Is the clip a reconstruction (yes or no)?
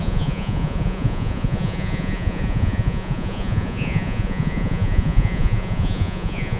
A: yes